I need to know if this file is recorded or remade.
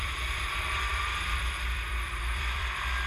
remade